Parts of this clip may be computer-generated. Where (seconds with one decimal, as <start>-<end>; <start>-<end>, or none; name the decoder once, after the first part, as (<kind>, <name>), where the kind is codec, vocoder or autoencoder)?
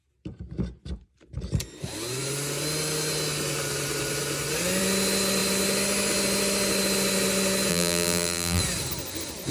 7.7-8.6 (vocoder, BigVGAN v2)